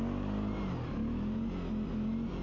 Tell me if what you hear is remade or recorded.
recorded